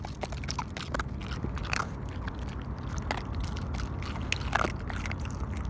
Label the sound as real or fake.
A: real